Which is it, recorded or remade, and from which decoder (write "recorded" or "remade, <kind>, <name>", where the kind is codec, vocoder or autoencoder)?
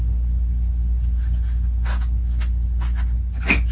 recorded